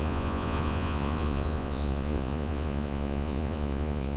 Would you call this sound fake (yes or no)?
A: yes